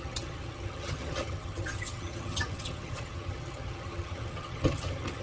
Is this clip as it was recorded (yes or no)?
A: no